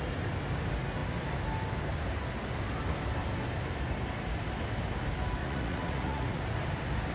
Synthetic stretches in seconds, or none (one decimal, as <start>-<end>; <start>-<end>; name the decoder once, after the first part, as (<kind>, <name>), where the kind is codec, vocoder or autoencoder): 5.4-6.4 (vocoder, Vocos)